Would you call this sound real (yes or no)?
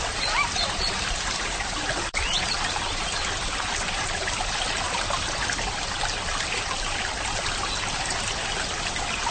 yes